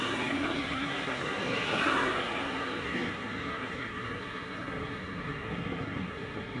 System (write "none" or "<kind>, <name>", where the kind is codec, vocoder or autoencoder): codec, SNAC